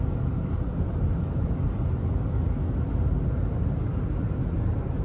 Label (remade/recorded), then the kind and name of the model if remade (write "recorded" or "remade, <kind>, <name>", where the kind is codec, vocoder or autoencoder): recorded